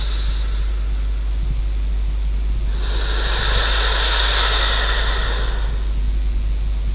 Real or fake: real